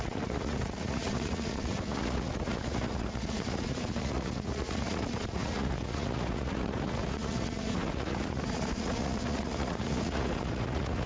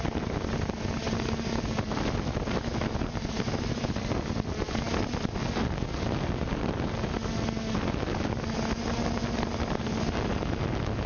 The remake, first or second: first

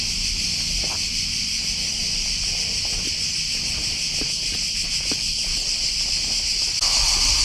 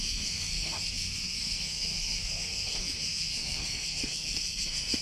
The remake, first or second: second